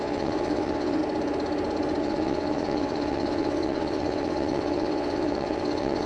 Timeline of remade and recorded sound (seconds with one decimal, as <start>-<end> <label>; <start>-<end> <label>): 0.0-1.0 remade; 1.0-2.0 recorded; 2.0-6.1 remade